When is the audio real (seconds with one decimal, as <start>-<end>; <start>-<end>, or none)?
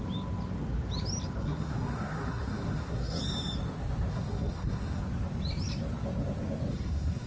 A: 0.0-1.4; 3.2-4.1; 5.0-6.7